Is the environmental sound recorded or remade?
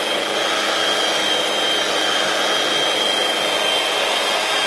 recorded